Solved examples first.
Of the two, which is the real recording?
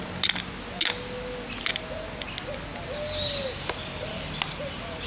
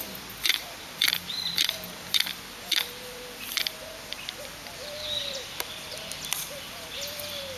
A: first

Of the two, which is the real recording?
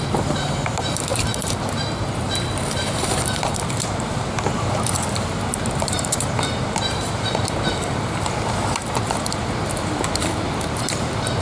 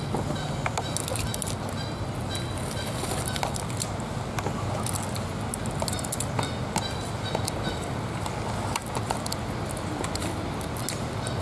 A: second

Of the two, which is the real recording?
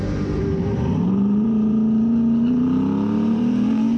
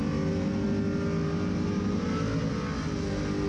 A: second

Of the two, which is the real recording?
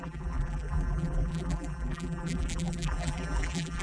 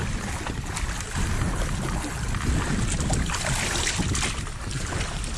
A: second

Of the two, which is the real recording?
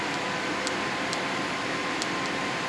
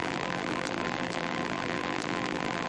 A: first